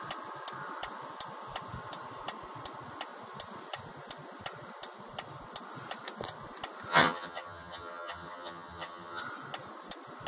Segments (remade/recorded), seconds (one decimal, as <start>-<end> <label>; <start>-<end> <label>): 0.0-6.9 recorded; 6.9-9.2 remade; 9.2-10.3 recorded